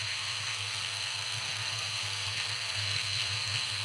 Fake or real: fake